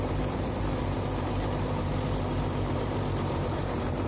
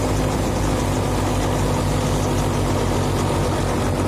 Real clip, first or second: second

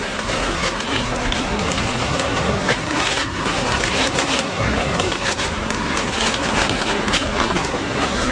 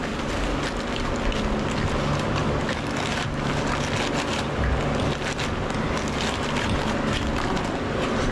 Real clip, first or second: second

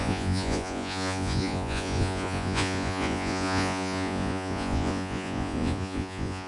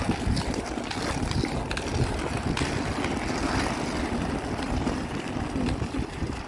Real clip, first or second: second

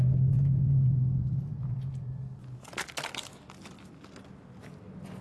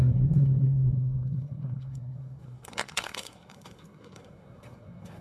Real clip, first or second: first